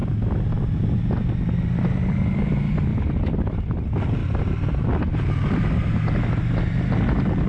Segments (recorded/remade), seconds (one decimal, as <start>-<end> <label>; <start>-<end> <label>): 0.0-1.0 remade; 1.0-2.9 recorded; 2.9-3.4 remade; 3.4-4.2 recorded; 4.2-4.9 remade; 4.9-7.5 recorded